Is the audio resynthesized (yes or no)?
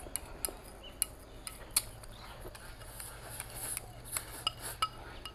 no